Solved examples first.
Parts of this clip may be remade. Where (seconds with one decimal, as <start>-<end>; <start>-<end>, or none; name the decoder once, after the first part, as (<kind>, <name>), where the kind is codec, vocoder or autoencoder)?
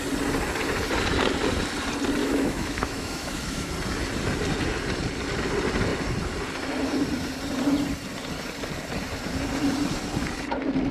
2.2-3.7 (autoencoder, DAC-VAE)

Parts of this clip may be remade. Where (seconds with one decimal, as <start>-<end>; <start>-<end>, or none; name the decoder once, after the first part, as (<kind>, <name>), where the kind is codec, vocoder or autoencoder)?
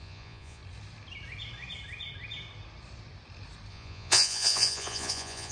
0.0-0.6 (vocoder, Vocos); 3.7-5.5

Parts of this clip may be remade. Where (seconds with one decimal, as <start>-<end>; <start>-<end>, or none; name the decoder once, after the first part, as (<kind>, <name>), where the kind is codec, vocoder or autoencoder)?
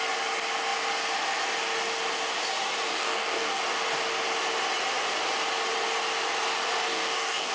2.9-3.6 (codec, DAC); 6.9-7.5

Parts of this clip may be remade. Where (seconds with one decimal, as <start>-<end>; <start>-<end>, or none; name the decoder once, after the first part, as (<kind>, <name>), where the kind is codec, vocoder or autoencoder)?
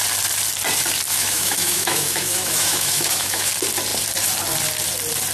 1.1-3.5 (autoencoder, DAC-VAE)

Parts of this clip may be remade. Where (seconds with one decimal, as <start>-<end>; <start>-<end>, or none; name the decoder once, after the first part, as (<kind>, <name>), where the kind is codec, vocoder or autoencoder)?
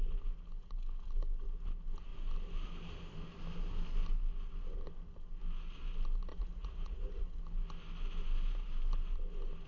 6.3-7.4 (vocoder, Vocos)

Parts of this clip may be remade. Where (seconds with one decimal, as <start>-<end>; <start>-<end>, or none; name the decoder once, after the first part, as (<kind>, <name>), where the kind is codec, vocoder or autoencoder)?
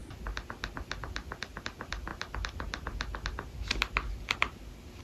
none